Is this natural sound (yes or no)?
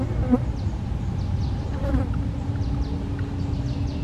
yes